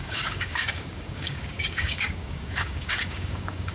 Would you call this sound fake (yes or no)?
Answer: yes